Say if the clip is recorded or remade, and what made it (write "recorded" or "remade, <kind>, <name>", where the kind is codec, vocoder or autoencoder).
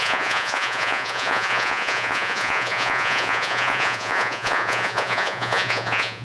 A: remade, vocoder, Vocos